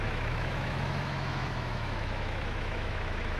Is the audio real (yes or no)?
no